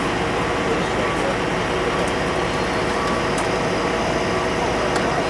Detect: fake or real real